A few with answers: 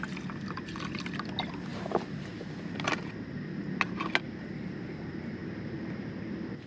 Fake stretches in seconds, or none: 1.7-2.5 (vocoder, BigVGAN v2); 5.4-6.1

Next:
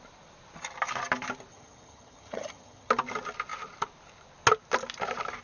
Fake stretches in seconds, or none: 1.5-2.9 (vocoder, HiFi-GAN)